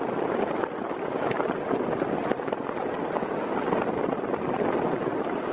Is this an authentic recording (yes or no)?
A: yes